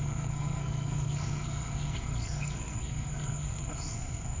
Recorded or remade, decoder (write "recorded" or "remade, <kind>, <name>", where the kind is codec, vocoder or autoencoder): remade, codec, SNAC